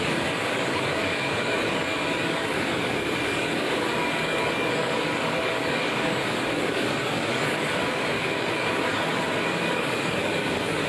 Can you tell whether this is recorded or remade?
remade